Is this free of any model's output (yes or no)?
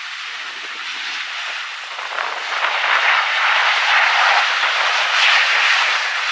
yes